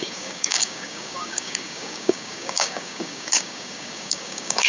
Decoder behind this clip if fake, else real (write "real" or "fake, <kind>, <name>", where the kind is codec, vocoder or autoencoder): fake, codec, DAC